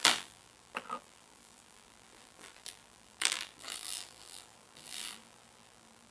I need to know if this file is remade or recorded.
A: remade